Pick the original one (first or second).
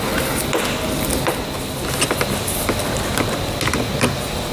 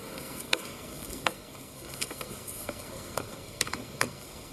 first